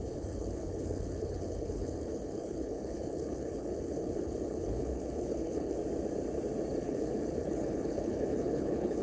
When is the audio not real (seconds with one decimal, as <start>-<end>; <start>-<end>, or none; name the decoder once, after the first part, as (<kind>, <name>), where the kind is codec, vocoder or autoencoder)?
0.0-5.8 (codec, HILCodec); 6.8-9.0